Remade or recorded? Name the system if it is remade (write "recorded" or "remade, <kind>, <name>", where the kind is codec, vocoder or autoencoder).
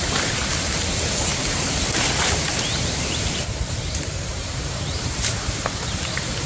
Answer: remade, vocoder, BigVGAN v2